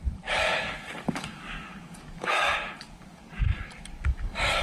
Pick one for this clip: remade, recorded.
remade